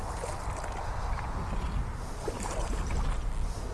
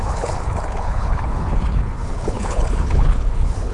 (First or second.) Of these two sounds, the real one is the first